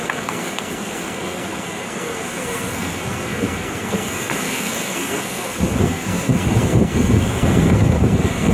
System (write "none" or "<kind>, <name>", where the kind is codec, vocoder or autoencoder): codec, SNAC